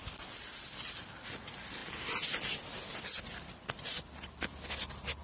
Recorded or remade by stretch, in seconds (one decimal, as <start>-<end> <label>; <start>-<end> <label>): 0.0-5.2 recorded